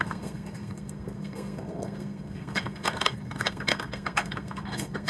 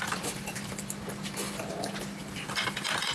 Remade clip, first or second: first